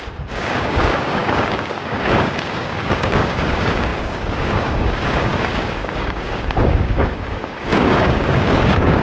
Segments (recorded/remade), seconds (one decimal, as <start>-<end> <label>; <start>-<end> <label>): 0.0-9.0 remade